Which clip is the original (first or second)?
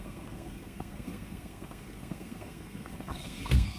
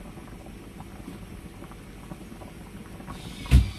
second